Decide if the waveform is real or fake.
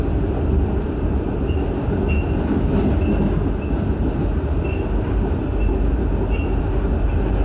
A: real